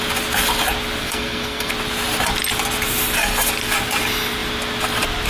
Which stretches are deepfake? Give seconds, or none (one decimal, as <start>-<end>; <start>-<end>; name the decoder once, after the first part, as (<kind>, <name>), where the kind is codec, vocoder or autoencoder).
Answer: 1.0-1.7 (codec, SNAC)